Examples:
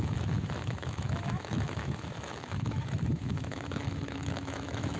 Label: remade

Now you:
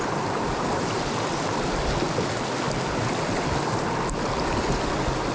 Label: recorded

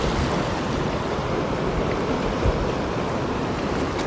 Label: recorded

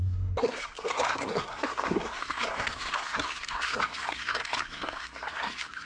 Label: remade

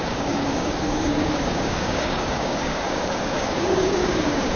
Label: remade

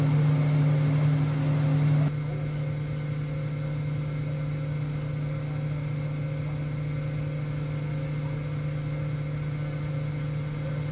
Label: recorded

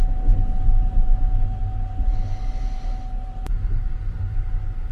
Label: recorded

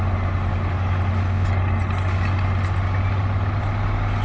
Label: recorded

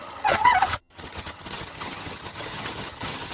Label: remade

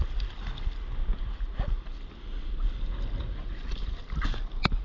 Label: recorded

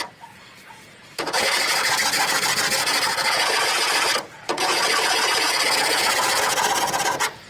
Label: remade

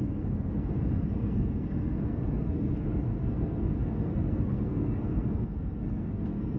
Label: remade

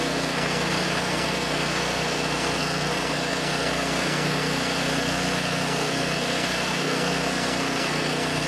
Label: remade